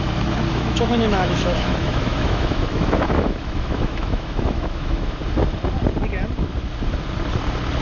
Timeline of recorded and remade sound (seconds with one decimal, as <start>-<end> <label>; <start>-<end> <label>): 0.0-0.5 recorded; 0.5-5.2 remade; 5.2-7.8 recorded